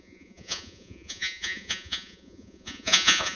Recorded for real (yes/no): no